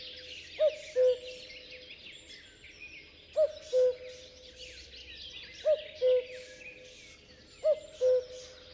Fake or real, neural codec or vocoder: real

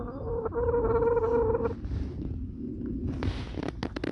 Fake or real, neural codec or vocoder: real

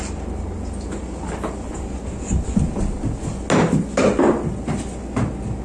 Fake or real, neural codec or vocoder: real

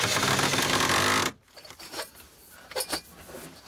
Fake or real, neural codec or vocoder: real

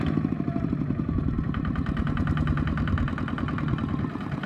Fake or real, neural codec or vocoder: fake, vocoder, BigVGAN v2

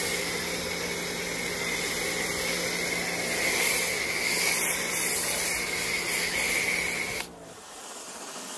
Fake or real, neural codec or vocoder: real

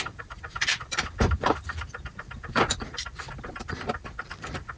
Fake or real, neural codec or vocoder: fake, vocoder, BigVGAN v2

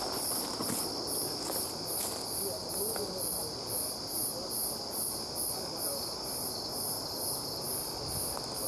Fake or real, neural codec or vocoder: real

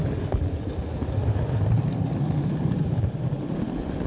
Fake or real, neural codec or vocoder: real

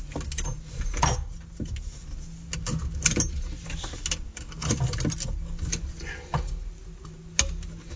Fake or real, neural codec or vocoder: real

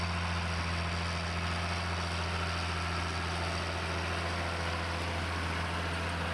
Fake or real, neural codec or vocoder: real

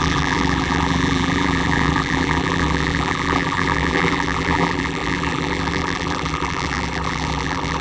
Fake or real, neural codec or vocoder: fake, vocoder, BigVGAN v2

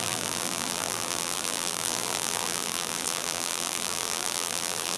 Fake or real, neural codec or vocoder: fake, vocoder, BigVGAN v2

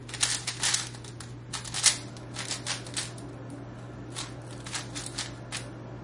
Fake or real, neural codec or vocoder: real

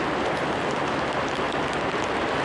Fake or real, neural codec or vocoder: real